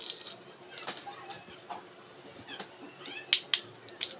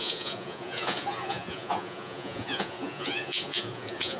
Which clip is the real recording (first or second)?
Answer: first